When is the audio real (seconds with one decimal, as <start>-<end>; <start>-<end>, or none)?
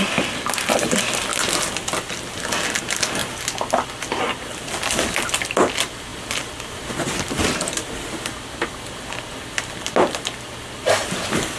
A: 0.0-11.6